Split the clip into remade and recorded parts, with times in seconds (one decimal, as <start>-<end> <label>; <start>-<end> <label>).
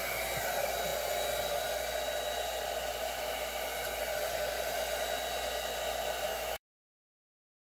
0.0-6.3 recorded; 6.3-6.9 remade; 6.9-7.7 recorded